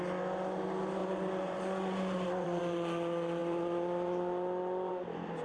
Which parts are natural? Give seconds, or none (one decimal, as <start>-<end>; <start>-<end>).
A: 0.0-1.0; 2.6-5.4